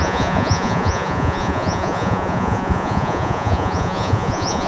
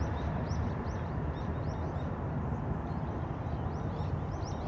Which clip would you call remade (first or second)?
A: first